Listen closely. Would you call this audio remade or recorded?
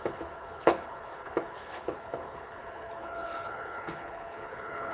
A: remade